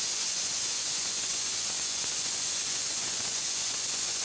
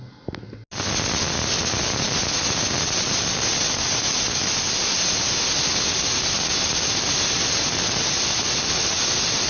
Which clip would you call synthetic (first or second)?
first